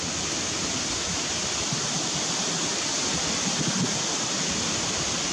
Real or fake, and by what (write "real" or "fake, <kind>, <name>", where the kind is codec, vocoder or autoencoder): real